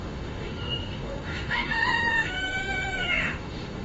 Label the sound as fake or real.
fake